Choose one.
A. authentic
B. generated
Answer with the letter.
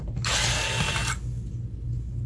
A